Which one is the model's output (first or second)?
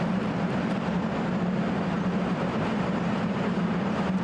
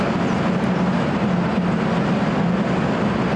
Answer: first